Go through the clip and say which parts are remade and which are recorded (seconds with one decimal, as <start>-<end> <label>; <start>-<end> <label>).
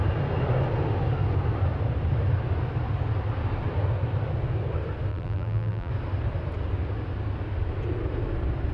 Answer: 0.0-5.1 recorded; 5.1-5.9 remade; 5.9-8.7 recorded